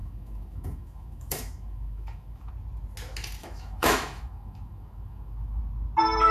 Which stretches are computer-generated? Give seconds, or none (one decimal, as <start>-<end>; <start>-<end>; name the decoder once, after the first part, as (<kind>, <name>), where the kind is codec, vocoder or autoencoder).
0.0-2.5 (autoencoder, DAC-VAE); 3.4-5.6